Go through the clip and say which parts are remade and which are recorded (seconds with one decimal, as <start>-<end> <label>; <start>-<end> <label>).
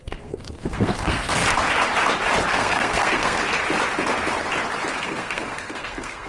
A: 0.0-1.4 remade; 1.4-2.5 recorded; 2.5-3.4 remade; 3.4-5.0 recorded; 5.0-6.3 remade